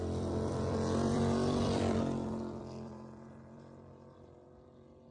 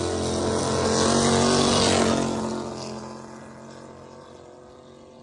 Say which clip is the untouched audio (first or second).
second